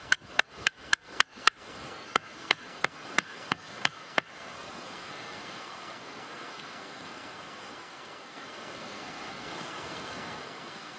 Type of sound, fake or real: fake